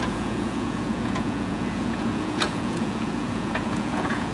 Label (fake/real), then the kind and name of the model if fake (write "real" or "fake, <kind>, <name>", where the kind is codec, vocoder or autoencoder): fake, vocoder, Vocos